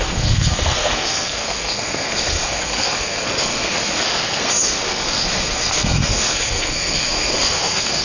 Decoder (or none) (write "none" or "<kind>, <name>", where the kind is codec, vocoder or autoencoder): codec, SNAC